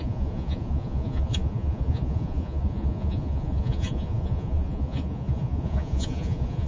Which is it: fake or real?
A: fake